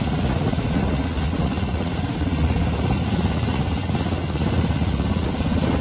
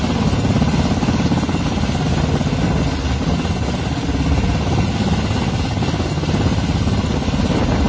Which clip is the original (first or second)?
second